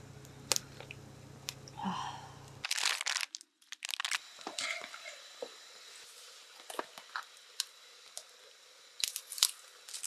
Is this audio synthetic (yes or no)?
no